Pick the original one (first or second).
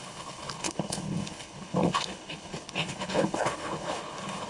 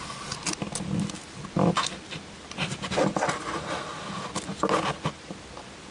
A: second